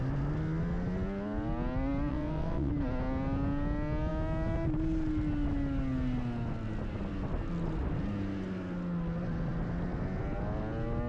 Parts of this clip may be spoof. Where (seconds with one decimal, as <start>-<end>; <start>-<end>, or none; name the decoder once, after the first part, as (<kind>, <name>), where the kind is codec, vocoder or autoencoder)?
2.1-2.7 (vocoder, WaveNeXt)